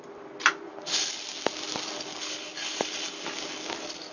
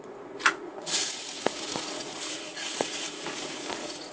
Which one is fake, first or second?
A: second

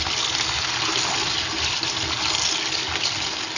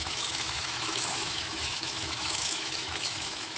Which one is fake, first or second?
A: second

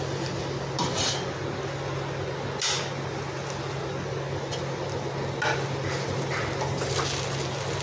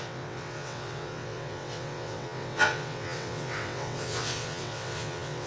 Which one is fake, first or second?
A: second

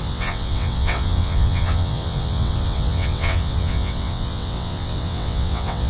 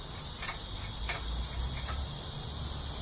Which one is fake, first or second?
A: first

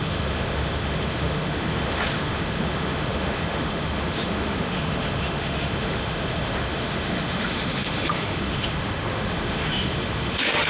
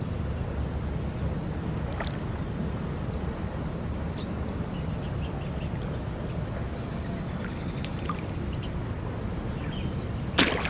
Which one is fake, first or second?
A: first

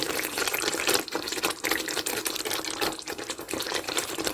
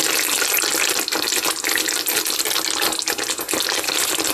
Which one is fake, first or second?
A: first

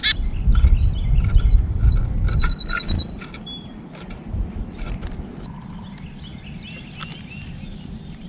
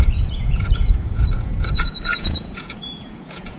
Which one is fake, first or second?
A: second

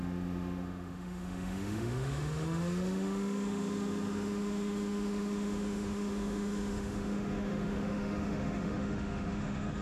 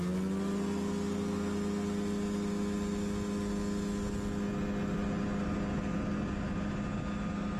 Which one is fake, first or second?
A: first